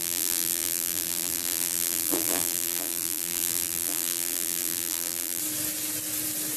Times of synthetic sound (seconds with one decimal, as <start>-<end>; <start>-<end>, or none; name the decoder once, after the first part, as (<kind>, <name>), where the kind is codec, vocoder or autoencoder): 0.0-5.4 (vocoder, BigVGAN v2)